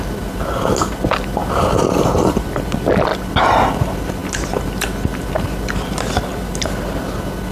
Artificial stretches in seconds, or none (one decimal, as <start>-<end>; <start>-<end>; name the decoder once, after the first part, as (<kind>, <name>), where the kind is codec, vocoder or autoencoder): none